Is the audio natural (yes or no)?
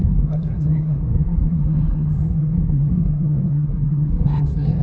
no